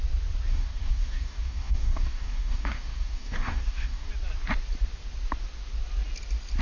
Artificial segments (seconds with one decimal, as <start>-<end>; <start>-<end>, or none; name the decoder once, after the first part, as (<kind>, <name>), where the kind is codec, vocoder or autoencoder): 0.5-4.1 (codec, DAC)